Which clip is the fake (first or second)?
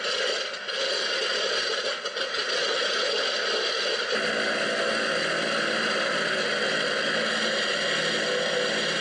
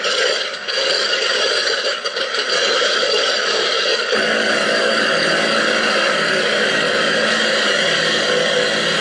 second